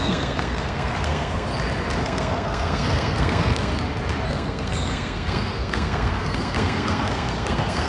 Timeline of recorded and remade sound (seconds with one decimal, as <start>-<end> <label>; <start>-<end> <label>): 0.0-1.5 remade; 1.5-2.0 recorded; 2.0-3.7 remade; 3.7-4.3 recorded; 4.3-7.9 remade